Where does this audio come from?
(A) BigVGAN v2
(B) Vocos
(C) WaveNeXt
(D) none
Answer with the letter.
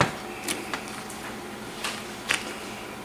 A